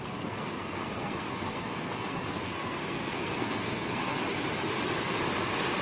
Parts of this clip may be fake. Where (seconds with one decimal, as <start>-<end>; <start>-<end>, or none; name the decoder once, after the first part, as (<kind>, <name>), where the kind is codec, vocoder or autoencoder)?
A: 0.0-4.2 (codec, SNAC)